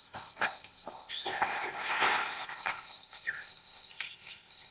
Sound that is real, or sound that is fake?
fake